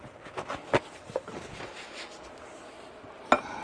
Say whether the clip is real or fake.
real